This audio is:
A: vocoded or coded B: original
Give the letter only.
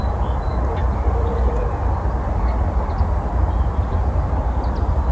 B